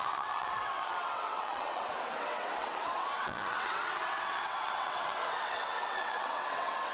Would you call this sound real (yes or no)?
no